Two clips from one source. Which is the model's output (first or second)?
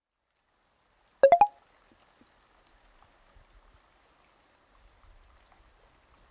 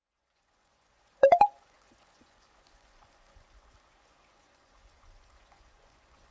second